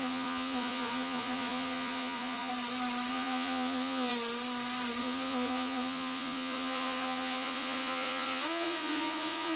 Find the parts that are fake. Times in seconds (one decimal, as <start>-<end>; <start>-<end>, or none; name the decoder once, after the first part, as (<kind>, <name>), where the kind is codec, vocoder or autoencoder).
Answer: 0.0-2.5 (vocoder, Vocos); 3.1-4.1; 5.0-9.6